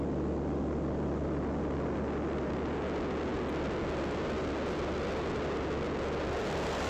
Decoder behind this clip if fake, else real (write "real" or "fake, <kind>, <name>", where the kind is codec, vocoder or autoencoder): real